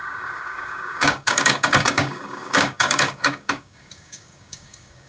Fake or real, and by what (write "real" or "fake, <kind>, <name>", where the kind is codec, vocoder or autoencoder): fake, codec, DAC